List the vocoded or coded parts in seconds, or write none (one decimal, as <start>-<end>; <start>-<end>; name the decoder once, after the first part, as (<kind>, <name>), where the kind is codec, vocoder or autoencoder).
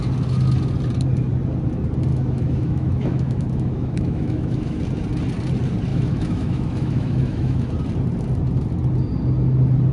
2.1-4.8 (autoencoder, DAC-VAE); 5.9-7.7